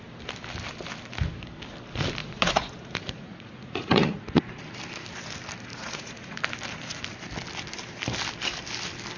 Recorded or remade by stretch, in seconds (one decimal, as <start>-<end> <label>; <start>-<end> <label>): 0.0-2.2 recorded; 2.2-4.5 remade; 4.5-5.7 recorded; 5.7-6.4 remade; 6.4-9.2 recorded